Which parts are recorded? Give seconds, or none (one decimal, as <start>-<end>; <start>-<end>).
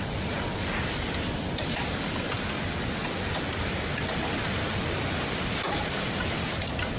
0.0-7.0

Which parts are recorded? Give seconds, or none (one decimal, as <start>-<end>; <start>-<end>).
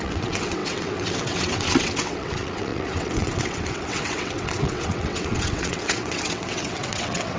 none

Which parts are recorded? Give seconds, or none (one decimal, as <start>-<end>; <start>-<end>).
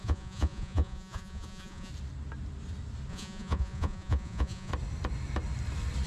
1.9-3.1; 4.7-6.1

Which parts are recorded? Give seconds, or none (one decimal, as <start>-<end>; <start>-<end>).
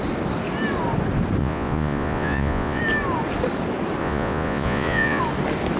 0.0-1.4; 2.8-4.0; 5.2-5.8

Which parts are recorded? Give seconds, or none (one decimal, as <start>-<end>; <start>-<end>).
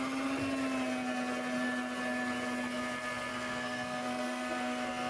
0.0-3.3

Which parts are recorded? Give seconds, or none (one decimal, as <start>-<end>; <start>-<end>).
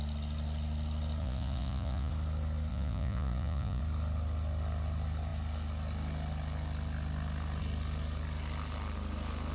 0.0-1.2; 2.1-2.7; 3.8-9.5